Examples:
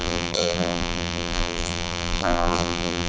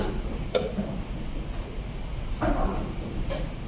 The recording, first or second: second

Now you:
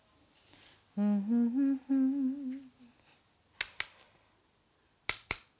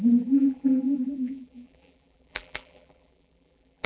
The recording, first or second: first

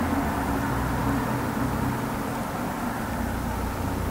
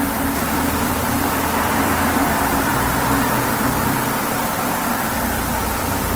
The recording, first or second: first